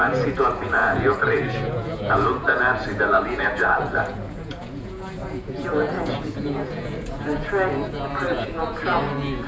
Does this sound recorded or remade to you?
remade